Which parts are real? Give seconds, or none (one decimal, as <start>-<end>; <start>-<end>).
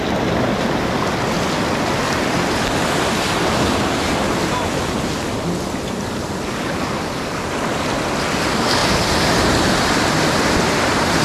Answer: 0.0-11.2